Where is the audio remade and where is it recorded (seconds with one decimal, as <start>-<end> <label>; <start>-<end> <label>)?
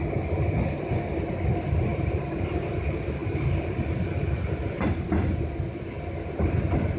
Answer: 0.0-1.9 recorded; 1.9-2.8 remade; 2.8-3.2 recorded; 3.2-5.1 remade; 5.1-7.0 recorded